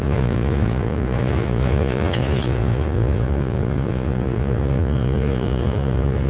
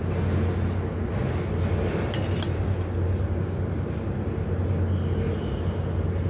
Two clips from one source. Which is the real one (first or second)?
second